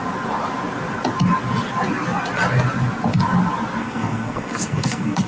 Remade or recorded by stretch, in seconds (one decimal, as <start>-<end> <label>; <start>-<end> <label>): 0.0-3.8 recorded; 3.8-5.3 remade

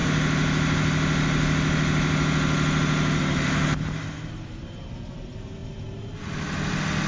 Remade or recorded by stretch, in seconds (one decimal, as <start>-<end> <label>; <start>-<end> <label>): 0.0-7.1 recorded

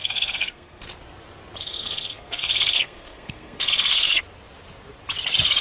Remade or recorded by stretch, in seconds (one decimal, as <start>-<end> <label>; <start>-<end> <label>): 0.0-0.8 remade; 0.8-1.6 recorded; 1.6-4.2 remade; 4.2-5.6 recorded